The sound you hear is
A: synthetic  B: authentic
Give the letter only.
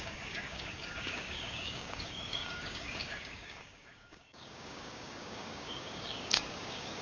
A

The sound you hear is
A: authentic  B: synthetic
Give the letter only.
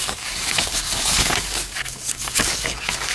B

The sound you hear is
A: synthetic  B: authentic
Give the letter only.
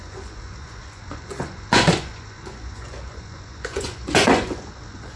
A